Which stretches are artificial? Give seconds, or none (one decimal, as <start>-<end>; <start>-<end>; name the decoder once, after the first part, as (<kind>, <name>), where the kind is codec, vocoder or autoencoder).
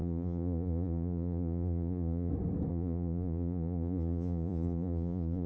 0.0-2.3 (vocoder, Vocos); 2.7-5.5